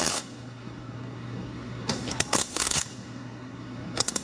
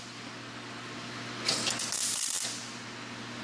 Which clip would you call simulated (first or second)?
first